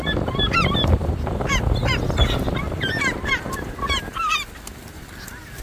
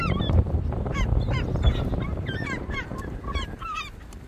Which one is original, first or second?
first